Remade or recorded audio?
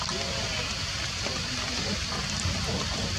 recorded